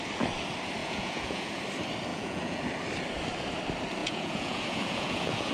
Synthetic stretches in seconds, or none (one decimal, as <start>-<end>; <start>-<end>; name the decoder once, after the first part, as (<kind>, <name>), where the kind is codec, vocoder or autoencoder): 0.8-1.6 (vocoder, Vocos); 2.1-2.6; 4.0-5.5